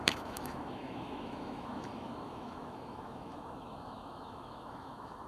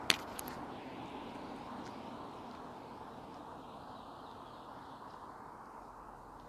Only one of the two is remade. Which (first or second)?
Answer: first